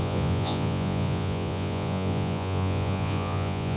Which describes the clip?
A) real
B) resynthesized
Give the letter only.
B